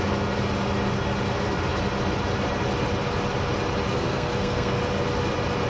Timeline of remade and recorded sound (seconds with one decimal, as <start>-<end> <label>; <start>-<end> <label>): 0.0-3.9 recorded; 3.9-4.8 remade; 4.8-5.7 recorded